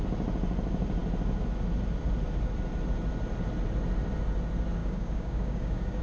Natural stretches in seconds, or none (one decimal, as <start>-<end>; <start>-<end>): 0.0-4.8

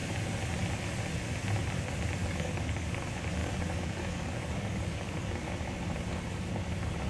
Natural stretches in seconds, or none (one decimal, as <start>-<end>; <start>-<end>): 0.0-2.2; 3.0-3.4; 5.5-7.1

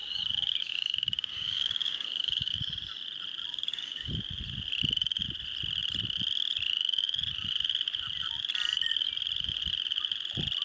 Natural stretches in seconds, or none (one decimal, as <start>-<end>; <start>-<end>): 2.6-3.5; 4.1-10.6

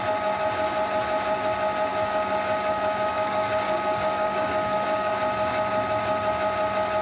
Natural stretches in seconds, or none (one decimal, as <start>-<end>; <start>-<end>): 0.0-1.9; 5.1-7.0

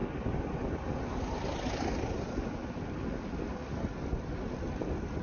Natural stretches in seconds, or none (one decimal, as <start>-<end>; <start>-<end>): 0.0-5.2

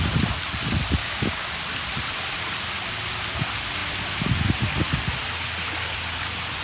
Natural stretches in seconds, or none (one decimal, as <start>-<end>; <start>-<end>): 0.0-1.0; 1.5-6.6